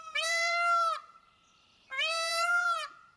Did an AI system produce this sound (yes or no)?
yes